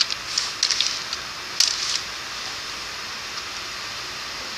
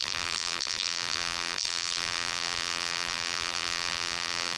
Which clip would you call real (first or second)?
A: first